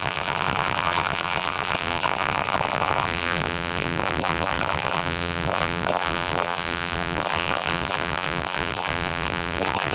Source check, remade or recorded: remade